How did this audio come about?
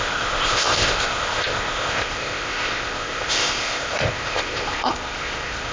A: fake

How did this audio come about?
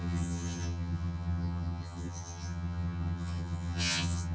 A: fake